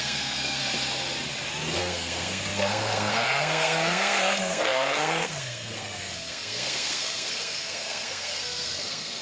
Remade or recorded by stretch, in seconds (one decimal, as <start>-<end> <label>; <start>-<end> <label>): 0.0-0.6 remade; 0.6-1.8 recorded; 1.8-9.2 remade